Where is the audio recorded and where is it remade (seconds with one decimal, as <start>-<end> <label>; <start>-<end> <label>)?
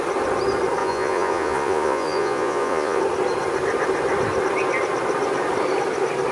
0.0-0.8 recorded; 0.8-3.0 remade; 3.0-6.3 recorded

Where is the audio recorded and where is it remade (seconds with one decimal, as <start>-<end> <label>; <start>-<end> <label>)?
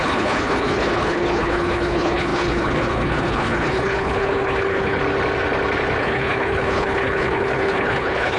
0.0-5.0 remade; 5.0-6.0 recorded; 6.0-8.4 remade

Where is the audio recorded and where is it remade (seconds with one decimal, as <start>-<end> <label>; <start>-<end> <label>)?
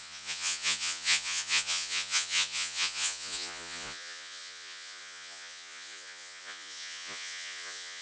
0.0-8.0 remade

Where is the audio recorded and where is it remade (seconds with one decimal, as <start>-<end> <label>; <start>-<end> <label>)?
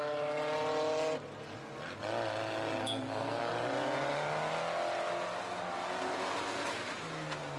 0.0-2.8 recorded; 2.8-3.5 remade; 3.5-7.6 recorded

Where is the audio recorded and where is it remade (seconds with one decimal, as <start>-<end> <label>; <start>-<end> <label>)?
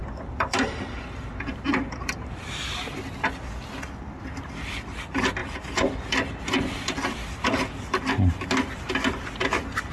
0.0-2.4 remade; 2.4-5.4 recorded; 5.4-8.1 remade; 8.1-9.9 recorded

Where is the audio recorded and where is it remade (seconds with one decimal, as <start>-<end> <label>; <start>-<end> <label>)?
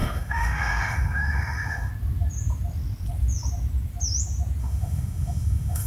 0.0-1.9 remade; 1.9-4.6 recorded; 4.6-5.9 remade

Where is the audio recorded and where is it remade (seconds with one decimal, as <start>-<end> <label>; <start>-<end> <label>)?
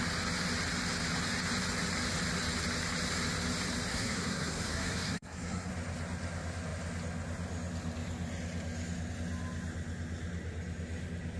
0.0-3.9 recorded; 3.9-5.7 remade; 5.7-11.4 recorded